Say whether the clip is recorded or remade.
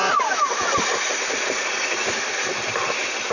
recorded